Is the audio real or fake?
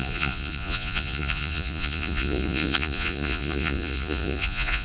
fake